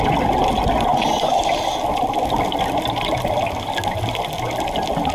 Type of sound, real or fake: real